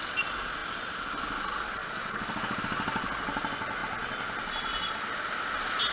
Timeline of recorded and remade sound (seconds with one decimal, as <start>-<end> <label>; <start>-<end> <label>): 0.0-1.8 recorded; 1.8-2.6 remade; 2.6-5.9 recorded